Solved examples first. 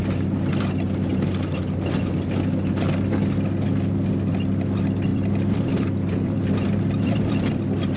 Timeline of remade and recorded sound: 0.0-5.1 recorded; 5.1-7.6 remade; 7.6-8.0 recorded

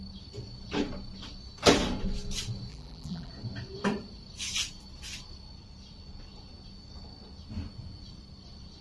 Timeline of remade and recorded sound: 0.0-2.7 recorded; 2.7-3.3 remade; 3.3-8.8 recorded

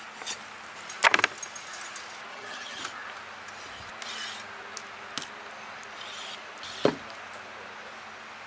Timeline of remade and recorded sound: 0.0-2.3 recorded; 2.3-2.8 remade; 2.8-8.5 recorded

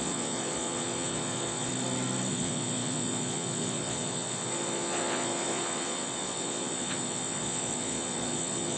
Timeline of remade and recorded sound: 0.0-1.7 remade; 1.7-2.3 recorded; 2.3-8.8 remade

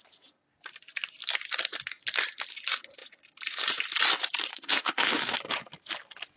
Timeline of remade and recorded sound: 0.0-4.5 recorded; 4.5-5.4 remade; 5.4-6.4 recorded